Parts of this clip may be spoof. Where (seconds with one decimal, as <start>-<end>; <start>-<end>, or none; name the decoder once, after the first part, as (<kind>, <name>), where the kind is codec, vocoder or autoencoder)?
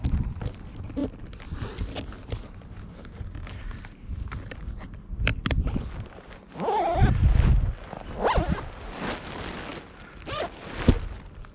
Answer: none